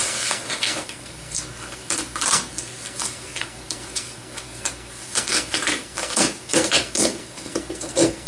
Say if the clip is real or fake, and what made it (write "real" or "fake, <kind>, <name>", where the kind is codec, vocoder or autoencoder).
fake, codec, SNAC